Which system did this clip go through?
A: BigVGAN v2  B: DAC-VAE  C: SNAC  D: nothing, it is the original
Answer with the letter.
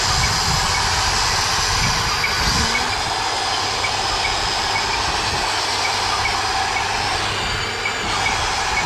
D